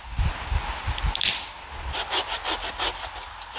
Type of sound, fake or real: real